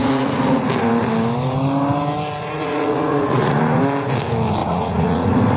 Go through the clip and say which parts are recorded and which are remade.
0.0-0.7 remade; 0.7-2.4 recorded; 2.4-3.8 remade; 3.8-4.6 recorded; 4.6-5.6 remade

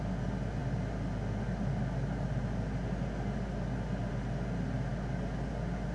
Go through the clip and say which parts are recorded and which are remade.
0.0-5.9 recorded

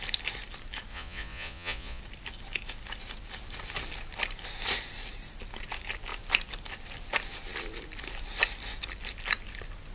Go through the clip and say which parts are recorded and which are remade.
0.0-0.9 recorded; 0.9-2.0 remade; 2.0-9.9 recorded